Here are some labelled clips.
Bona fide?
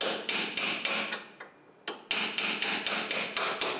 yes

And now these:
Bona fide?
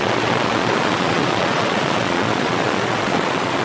no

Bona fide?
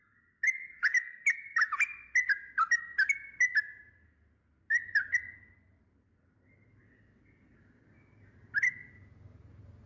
yes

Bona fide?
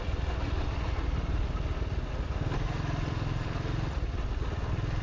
yes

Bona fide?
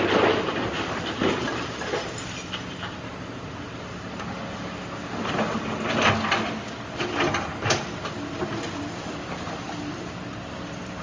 yes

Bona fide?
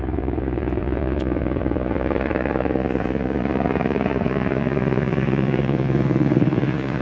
no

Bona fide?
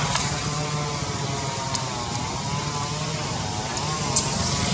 yes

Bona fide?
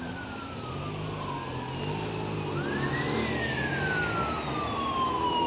yes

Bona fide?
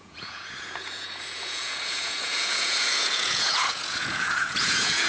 no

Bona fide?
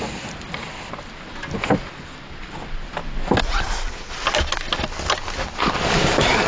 yes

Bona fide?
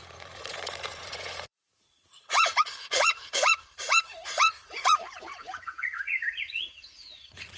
no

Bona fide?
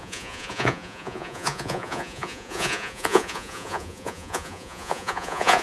no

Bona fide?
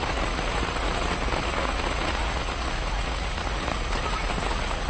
no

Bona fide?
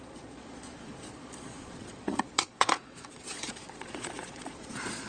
no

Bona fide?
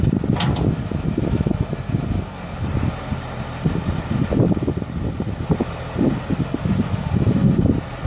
yes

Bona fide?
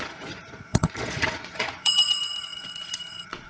no